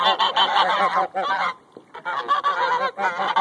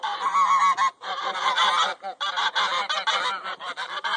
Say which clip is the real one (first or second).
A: first